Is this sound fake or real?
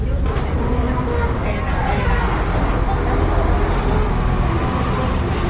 real